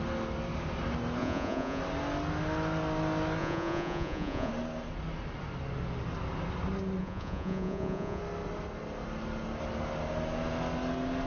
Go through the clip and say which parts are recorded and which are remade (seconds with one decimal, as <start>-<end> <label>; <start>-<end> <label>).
0.0-1.2 recorded; 1.2-1.8 remade; 1.8-3.4 recorded; 3.4-4.5 remade; 4.5-7.0 recorded; 7.0-8.2 remade; 8.2-11.3 recorded

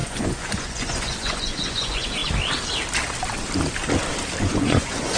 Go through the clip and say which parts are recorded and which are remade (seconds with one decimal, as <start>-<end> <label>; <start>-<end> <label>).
0.0-2.2 remade; 2.2-4.4 recorded; 4.4-5.2 remade

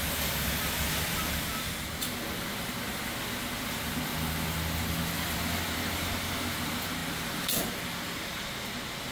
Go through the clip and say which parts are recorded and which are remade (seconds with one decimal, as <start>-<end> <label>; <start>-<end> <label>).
0.0-9.1 recorded

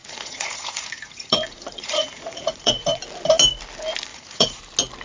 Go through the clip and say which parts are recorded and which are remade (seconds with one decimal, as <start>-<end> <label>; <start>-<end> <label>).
0.0-3.0 remade; 3.0-4.1 recorded; 4.1-4.6 remade; 4.6-5.0 recorded

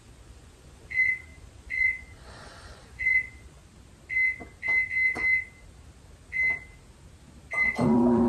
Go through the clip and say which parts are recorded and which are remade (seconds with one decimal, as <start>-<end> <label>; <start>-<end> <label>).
0.0-3.6 remade; 3.6-7.6 recorded; 7.6-8.3 remade

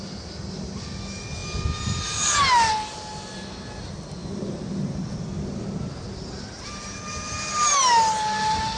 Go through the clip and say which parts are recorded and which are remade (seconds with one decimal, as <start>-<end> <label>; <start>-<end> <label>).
0.0-8.8 recorded

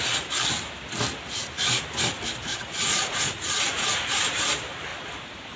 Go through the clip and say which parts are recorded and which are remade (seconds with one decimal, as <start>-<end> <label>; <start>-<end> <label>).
0.0-2.5 recorded; 2.5-4.2 remade; 4.2-5.6 recorded

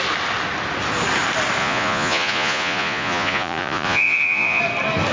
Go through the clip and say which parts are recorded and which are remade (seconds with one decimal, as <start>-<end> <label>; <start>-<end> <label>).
0.0-1.6 recorded; 1.6-4.6 remade; 4.6-5.1 recorded